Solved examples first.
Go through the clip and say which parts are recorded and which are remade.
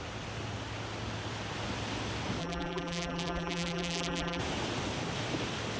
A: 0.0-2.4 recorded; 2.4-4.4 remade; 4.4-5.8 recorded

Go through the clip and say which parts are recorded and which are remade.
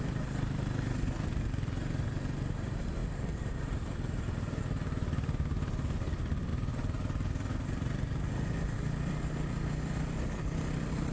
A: 0.0-3.0 recorded; 3.0-4.6 remade; 4.6-11.1 recorded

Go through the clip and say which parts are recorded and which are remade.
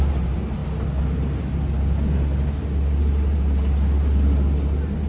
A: 0.0-5.1 recorded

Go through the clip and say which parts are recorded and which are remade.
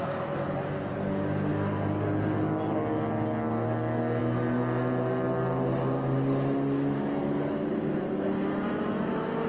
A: 0.0-9.5 recorded